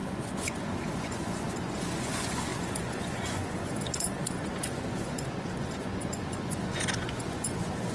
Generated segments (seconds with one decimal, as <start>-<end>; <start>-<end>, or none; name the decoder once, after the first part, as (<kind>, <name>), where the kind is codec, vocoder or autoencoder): 0.0-7.9 (vocoder, Vocos)